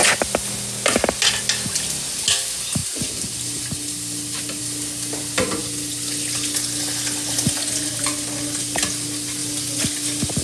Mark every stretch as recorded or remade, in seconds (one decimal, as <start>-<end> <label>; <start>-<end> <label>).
0.0-10.4 recorded